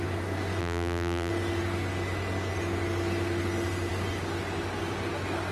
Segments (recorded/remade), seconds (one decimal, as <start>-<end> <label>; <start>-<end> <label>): 0.0-0.6 recorded; 0.6-1.3 remade; 1.3-5.5 recorded